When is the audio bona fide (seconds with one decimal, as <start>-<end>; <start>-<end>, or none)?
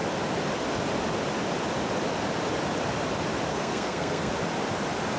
0.0-3.5; 4.3-5.2